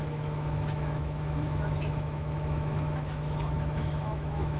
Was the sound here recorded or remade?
remade